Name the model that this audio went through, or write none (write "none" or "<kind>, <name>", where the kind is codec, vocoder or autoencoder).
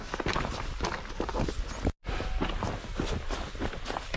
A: none